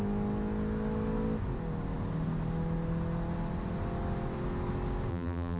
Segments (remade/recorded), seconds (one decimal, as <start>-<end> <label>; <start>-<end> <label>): 0.0-5.1 recorded; 5.1-5.6 remade